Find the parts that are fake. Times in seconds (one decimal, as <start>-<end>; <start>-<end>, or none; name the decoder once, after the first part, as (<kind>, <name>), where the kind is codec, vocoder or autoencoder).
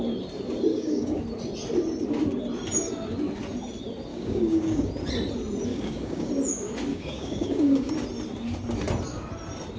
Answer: 0.7-1.2 (codec, DAC); 4.1-4.9; 5.7-6.3; 6.9-7.9